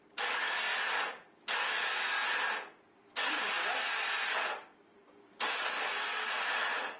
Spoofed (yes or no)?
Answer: no